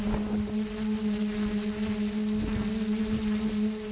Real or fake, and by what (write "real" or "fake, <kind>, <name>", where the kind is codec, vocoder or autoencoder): real